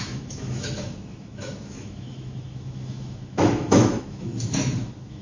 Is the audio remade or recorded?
remade